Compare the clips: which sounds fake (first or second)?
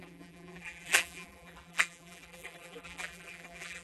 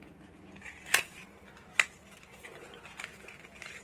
first